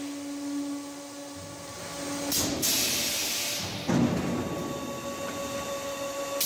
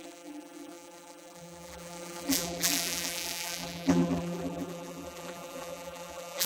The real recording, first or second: first